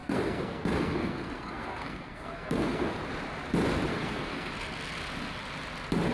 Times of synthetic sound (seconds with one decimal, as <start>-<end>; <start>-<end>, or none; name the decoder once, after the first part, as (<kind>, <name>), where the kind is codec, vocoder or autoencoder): 0.0-3.0 (codec, SNAC); 3.9-4.5